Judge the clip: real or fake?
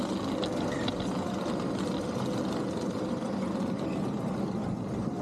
real